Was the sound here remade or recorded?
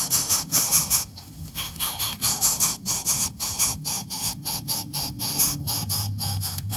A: remade